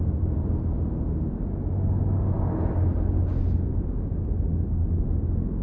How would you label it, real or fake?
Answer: real